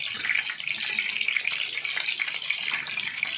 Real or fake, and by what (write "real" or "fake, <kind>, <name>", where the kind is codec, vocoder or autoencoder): real